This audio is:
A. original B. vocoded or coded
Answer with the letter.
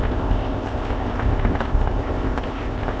B